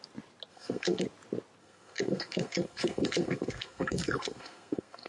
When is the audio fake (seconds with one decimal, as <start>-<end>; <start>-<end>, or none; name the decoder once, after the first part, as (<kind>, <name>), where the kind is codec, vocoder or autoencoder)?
0.5-1.0 (codec, SNAC); 1.6-5.1